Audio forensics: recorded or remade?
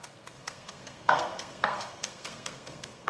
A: remade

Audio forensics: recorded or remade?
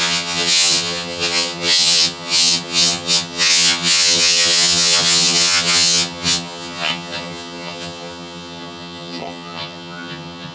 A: remade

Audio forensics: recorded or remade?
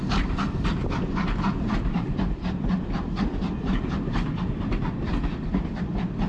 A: remade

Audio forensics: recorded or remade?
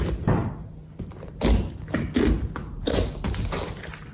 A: recorded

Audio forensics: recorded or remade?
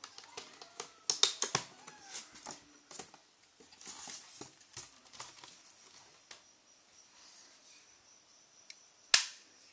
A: recorded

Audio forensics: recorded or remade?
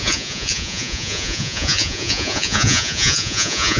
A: remade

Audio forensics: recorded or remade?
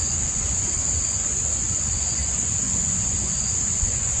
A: remade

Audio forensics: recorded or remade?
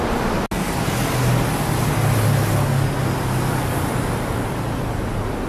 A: recorded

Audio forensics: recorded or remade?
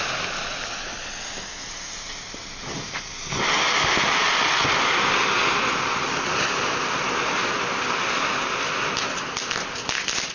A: recorded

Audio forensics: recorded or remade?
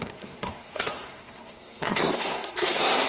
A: remade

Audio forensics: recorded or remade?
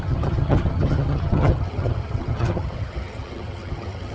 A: remade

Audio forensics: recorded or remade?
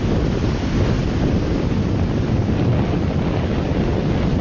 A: recorded